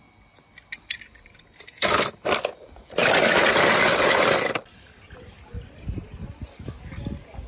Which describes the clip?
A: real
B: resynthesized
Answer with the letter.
A